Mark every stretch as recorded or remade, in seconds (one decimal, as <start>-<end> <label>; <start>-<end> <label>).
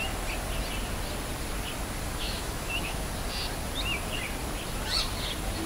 0.0-2.2 recorded; 2.2-3.0 remade; 3.0-5.7 recorded